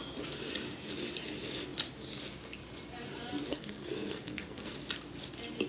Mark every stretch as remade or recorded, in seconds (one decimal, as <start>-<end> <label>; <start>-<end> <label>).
0.0-3.5 recorded; 3.5-4.7 remade; 4.7-5.7 recorded